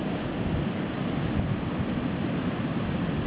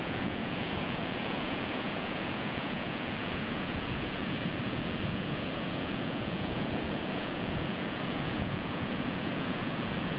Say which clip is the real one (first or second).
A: first